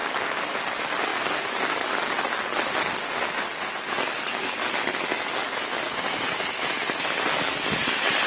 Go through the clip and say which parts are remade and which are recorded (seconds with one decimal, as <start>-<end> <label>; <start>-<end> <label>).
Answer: 0.0-8.3 recorded